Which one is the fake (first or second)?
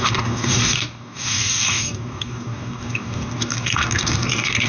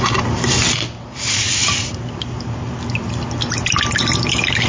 first